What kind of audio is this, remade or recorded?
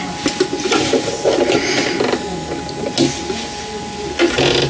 recorded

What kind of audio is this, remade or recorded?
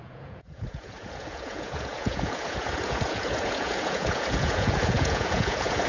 remade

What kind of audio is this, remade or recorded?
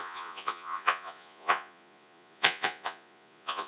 remade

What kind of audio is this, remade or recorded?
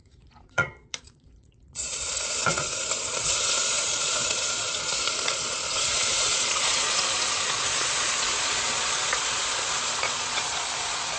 remade